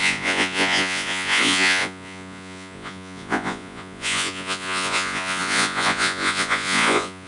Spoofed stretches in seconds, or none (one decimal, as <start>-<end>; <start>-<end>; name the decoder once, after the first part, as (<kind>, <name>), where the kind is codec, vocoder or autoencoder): 0.0-7.3 (vocoder, Vocos)